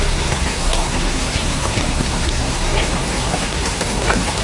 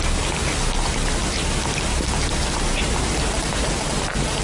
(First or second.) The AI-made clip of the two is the first